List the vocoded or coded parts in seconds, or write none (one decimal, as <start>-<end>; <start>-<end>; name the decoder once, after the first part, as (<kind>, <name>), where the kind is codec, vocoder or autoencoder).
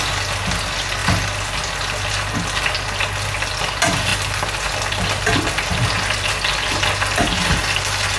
none